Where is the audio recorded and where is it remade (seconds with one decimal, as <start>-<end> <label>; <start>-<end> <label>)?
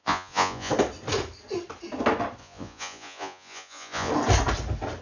0.0-0.7 remade; 0.7-2.4 recorded; 2.4-4.1 remade; 4.1-5.0 recorded